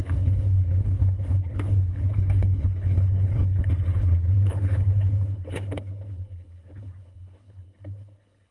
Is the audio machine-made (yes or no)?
yes